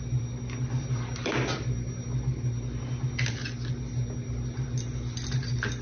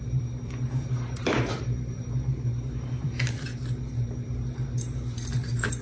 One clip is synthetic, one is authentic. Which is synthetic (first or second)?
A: second